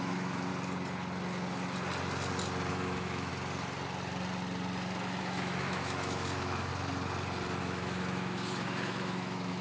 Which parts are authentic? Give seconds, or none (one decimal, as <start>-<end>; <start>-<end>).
0.5-2.7; 3.3-5.2; 6.7-7.6